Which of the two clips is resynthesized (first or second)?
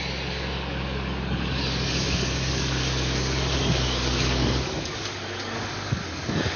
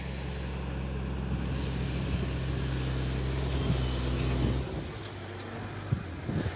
first